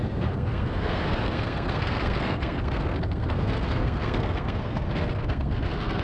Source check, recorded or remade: remade